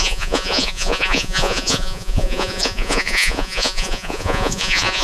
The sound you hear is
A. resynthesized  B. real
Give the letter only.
A